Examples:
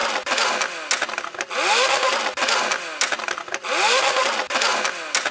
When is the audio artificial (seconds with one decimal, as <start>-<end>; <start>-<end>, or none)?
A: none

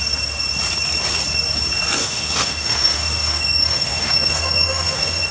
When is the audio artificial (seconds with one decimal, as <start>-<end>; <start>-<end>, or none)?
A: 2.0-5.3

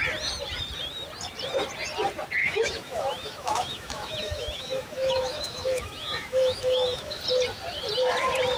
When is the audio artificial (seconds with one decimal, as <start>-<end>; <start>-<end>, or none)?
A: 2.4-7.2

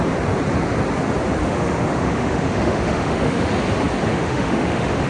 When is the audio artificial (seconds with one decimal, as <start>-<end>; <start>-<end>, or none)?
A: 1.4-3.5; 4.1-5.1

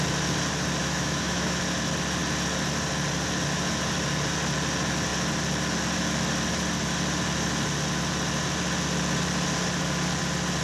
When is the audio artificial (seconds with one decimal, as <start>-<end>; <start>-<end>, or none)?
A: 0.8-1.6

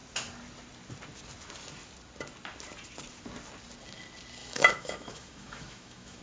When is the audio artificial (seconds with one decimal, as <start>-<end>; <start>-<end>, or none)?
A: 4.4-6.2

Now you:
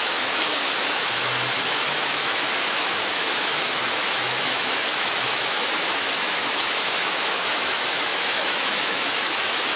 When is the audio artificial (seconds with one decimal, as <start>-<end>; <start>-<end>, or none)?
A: 0.0-9.8

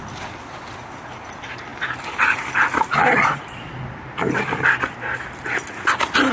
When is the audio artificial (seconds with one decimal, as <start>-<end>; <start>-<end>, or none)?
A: none